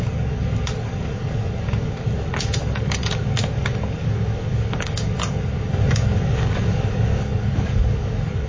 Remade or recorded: remade